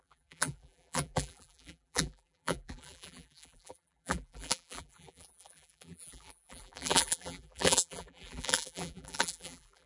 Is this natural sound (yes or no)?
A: no